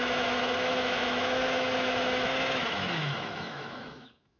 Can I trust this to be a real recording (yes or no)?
no